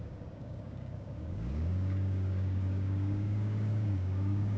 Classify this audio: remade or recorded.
remade